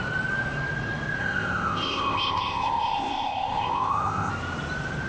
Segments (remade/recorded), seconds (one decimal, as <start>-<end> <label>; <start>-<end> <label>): 0.0-1.2 recorded; 1.2-4.3 remade; 4.3-5.1 recorded